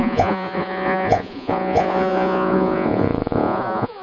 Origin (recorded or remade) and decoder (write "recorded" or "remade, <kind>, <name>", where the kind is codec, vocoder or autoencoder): remade, vocoder, Vocos